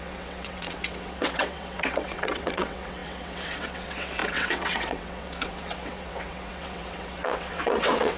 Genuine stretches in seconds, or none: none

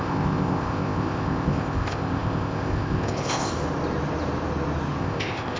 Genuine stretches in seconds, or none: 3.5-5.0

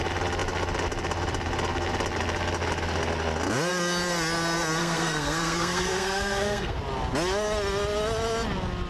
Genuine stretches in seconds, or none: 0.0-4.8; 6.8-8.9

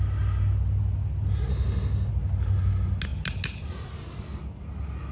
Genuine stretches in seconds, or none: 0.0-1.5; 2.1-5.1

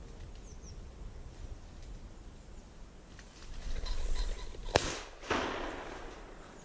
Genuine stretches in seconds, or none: 0.0-6.6